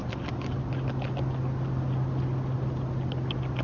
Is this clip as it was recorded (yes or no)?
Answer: yes